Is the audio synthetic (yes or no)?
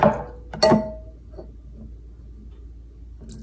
no